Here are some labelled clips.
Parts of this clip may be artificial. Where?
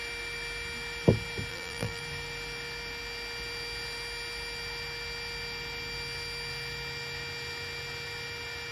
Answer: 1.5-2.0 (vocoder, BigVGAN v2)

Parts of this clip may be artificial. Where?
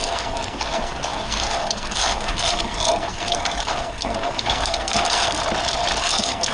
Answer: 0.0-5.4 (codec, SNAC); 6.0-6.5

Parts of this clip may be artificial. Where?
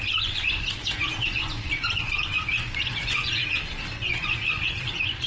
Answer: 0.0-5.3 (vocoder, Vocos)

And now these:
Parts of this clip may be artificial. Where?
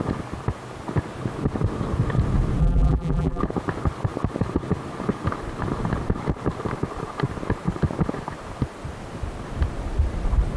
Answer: 2.6-3.4 (vocoder, BigVGAN v2)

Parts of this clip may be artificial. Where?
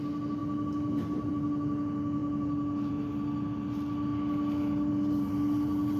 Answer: none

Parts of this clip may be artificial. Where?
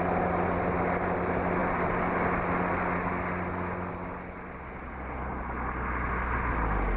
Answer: none